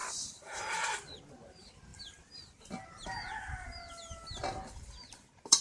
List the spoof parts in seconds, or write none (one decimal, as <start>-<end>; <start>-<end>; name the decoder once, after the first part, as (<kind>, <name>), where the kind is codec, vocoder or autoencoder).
none